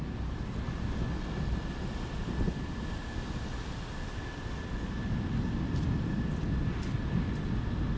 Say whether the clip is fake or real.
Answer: real